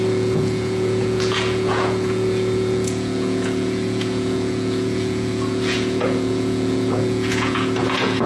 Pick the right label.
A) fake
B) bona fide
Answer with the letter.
A